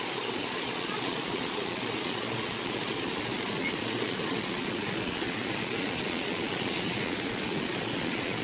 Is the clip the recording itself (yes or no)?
no